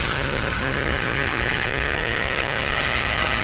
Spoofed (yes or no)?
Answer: yes